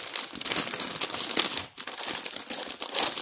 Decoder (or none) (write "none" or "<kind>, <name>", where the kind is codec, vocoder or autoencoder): none